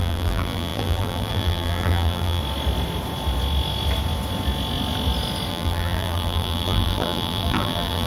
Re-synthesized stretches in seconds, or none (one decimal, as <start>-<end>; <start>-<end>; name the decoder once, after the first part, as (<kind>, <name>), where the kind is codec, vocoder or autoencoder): 0.0-2.4 (vocoder, BigVGAN v2); 5.5-8.1